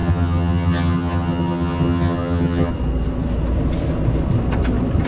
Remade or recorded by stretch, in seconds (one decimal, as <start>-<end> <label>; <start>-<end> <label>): 0.0-2.7 remade; 2.7-5.1 recorded